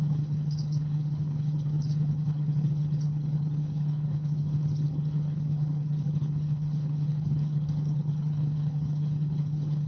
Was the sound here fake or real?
fake